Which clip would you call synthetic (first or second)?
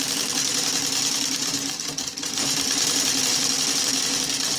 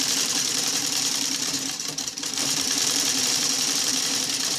second